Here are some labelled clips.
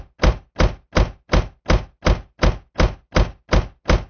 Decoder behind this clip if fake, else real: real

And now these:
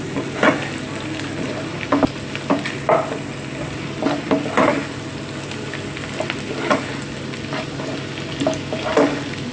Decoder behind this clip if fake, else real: real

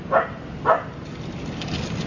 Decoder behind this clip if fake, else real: real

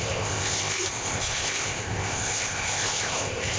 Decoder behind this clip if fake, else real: fake, codec, ZipCodec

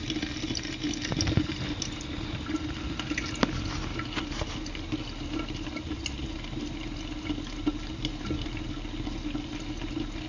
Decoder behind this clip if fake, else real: real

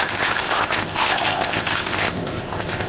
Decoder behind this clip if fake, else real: fake, codec, ZipCodec